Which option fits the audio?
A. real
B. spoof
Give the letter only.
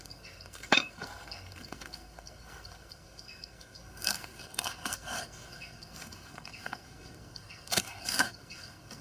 B